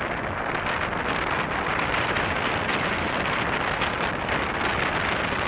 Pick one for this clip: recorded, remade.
recorded